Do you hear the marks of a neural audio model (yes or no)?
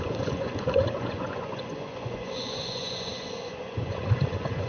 yes